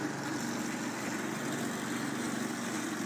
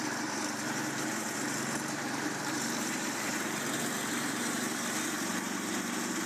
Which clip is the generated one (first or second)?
second